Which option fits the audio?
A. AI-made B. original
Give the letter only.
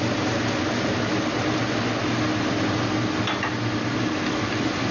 B